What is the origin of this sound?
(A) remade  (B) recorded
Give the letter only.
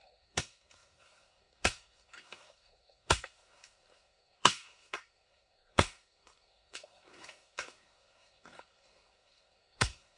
A